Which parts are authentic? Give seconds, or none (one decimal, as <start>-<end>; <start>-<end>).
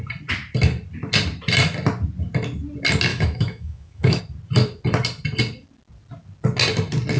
0.0-3.1; 4.2-7.2